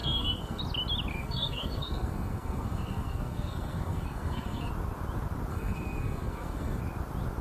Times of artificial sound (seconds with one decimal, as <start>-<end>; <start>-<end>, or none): 0.0-0.6; 1.1-4.7; 5.5-6.8